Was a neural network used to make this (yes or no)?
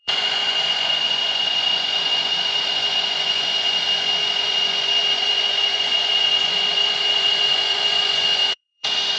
yes